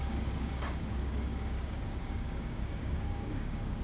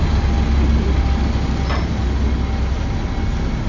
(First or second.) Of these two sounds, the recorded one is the second